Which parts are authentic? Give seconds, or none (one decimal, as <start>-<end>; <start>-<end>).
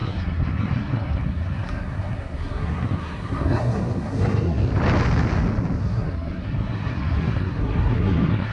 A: 4.6-5.8